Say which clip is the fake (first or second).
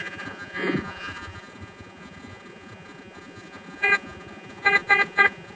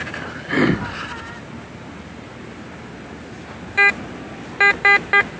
first